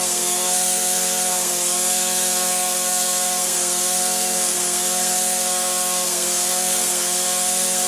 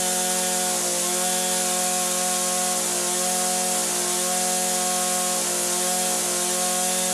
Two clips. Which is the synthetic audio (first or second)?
first